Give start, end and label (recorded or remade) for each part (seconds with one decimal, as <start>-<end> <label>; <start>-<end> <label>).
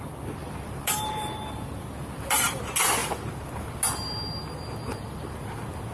0.0-0.4 recorded; 0.4-2.6 remade; 2.6-5.9 recorded